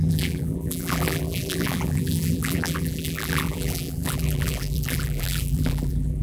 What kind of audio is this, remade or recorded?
remade